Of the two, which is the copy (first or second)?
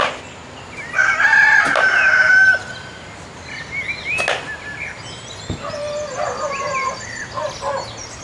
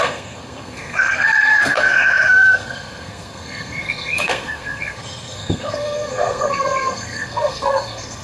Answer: second